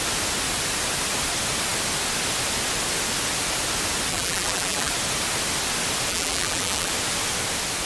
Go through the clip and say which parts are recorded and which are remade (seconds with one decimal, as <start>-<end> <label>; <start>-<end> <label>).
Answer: 0.0-4.1 recorded; 4.1-4.9 remade; 4.9-6.1 recorded; 6.1-6.9 remade; 6.9-7.9 recorded